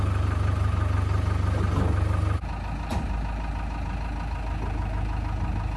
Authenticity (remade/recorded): recorded